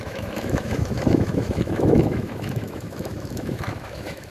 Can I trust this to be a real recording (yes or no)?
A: no